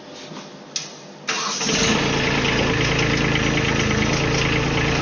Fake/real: real